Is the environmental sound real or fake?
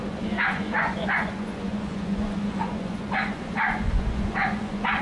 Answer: fake